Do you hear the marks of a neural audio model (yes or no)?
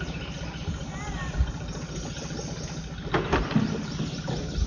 no